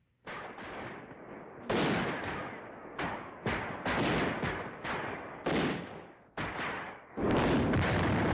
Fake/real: real